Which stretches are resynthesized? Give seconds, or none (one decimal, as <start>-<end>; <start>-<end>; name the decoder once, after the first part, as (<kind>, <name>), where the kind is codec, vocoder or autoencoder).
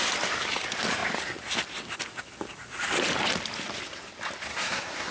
4.5-5.1 (codec, SNAC)